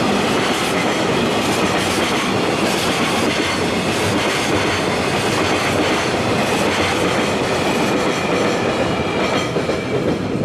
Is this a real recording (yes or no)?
yes